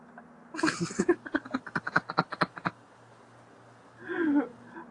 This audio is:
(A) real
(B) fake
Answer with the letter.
A